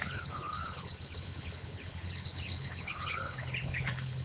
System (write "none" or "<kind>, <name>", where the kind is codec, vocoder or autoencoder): codec, HILCodec